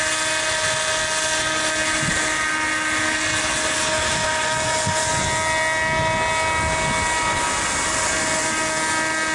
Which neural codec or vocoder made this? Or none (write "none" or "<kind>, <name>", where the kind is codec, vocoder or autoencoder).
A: none